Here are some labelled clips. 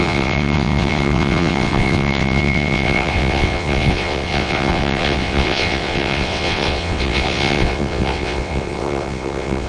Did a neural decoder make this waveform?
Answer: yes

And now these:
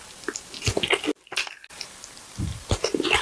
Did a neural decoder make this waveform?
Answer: no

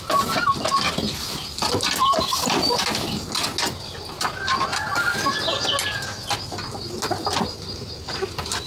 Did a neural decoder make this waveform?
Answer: no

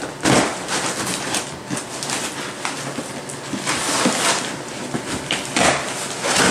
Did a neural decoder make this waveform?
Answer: no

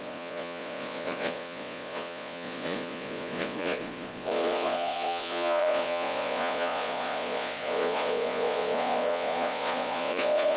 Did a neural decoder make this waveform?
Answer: yes